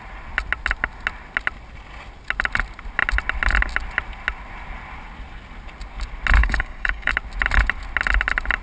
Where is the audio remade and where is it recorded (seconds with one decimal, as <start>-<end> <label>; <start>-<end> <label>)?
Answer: 0.0-6.4 recorded; 6.4-7.1 remade; 7.1-8.6 recorded